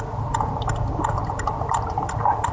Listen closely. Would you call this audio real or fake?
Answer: real